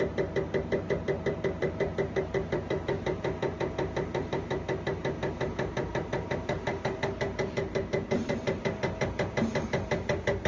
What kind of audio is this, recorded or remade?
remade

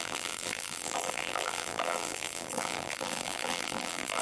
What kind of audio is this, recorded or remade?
remade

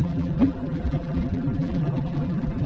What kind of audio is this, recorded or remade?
remade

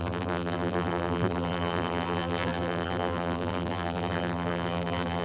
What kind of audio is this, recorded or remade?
remade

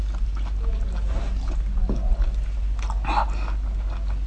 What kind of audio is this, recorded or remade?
recorded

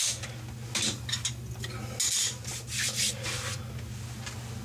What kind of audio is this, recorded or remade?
recorded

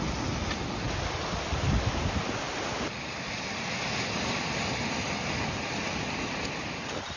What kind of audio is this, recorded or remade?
recorded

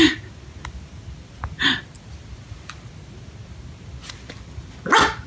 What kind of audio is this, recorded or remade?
recorded